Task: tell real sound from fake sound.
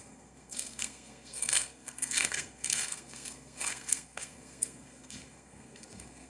fake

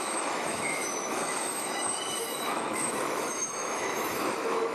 fake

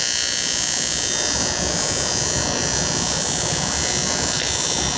real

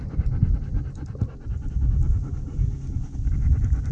real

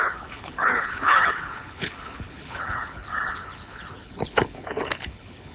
fake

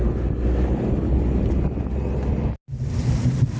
real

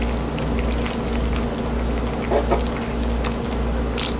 real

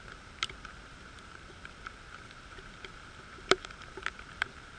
fake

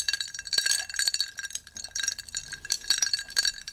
fake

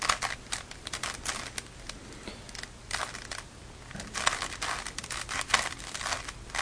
real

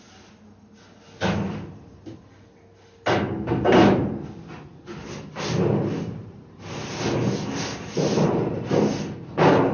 real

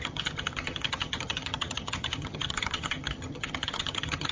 fake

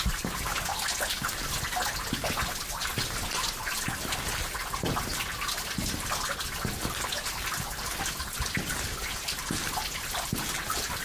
real